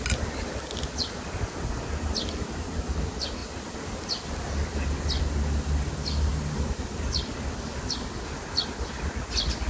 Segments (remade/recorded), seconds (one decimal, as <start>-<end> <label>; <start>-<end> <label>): 0.0-9.7 recorded